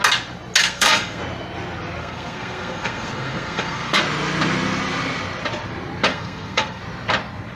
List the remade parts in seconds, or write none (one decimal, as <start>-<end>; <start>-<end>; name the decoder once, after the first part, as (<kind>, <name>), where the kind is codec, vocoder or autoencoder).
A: 0.6-1.2 (codec, SNAC); 2.0-4.0; 6.1-6.8